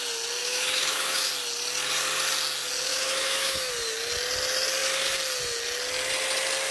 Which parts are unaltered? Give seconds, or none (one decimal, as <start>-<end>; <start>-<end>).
0.0-0.4; 1.3-2.9; 3.7-6.7